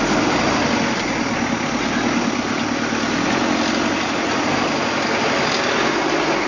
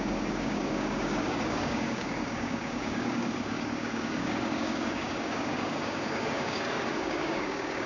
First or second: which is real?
first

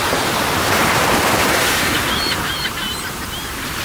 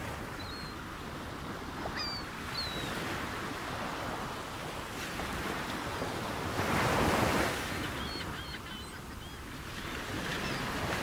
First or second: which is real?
second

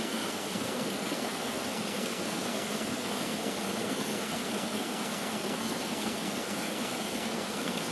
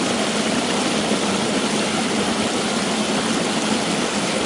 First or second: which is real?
second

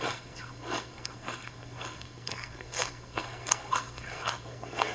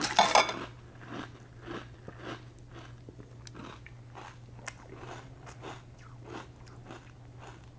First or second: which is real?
second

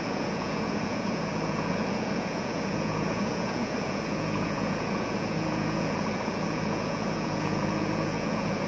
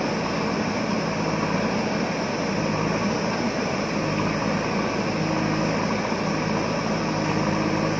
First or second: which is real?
second